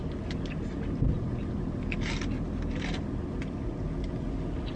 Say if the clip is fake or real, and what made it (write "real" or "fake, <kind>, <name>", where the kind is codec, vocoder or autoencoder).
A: real